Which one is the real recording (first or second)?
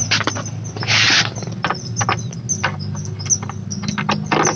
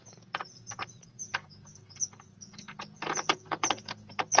first